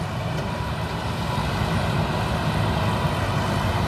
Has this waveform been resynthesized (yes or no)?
yes